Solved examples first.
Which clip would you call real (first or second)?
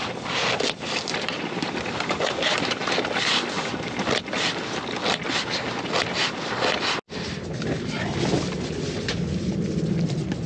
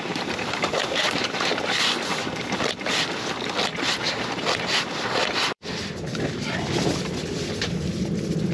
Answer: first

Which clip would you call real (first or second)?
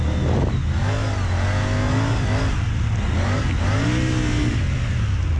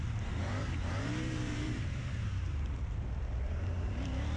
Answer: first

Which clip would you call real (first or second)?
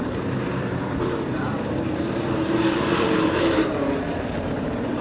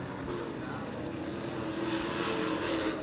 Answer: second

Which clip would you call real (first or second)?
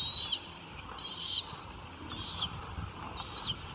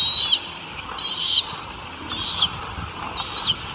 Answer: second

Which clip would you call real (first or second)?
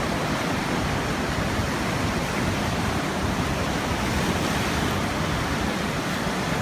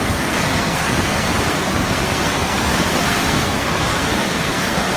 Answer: first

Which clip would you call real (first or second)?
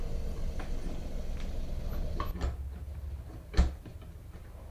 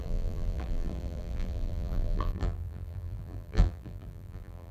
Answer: first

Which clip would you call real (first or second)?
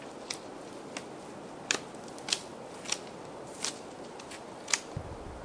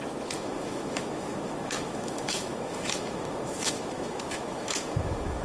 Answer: first